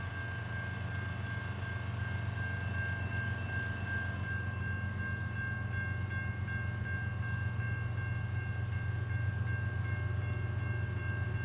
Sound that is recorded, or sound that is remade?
recorded